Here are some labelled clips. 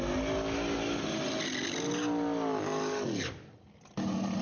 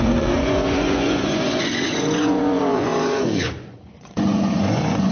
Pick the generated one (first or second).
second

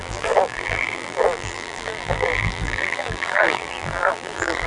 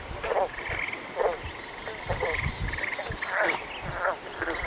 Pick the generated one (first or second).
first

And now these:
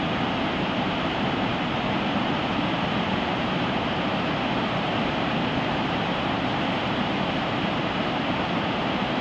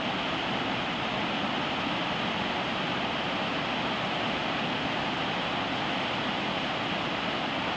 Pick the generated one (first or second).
first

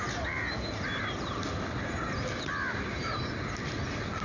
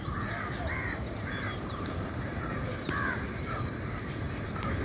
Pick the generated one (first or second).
second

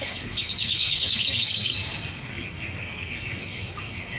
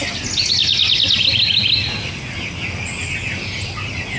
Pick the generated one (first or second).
first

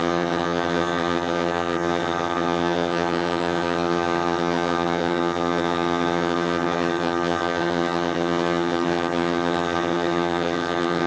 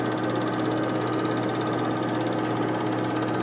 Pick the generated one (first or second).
first